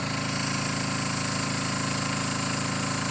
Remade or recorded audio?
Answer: recorded